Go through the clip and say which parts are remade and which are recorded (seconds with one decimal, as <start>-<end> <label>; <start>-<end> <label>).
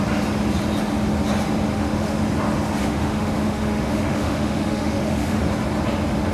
0.0-1.7 recorded; 1.7-2.2 remade; 2.2-2.8 recorded; 2.8-5.4 remade; 5.4-6.3 recorded